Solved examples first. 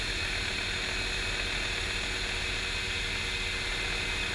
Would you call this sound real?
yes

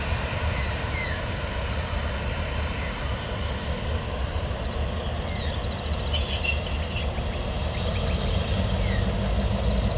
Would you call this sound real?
yes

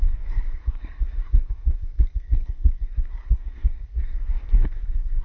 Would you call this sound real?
no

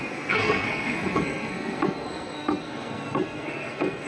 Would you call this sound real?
no